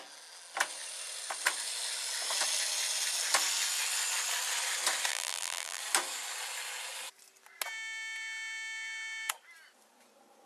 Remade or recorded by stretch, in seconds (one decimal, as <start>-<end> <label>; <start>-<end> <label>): 0.0-5.1 recorded; 5.1-5.8 remade; 5.8-10.5 recorded